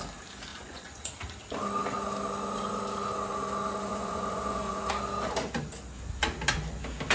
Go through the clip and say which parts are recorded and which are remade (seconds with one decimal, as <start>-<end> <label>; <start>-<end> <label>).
0.0-0.5 recorded; 0.5-1.1 remade; 1.1-3.9 recorded; 3.9-4.9 remade; 4.9-7.1 recorded